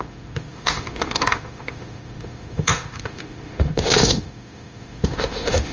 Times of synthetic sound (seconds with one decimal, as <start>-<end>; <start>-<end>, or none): 0.0-5.7